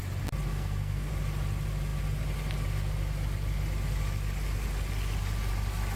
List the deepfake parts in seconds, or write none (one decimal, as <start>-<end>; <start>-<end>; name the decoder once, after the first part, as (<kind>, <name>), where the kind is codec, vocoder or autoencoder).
0.5-1.1 (codec, SNAC)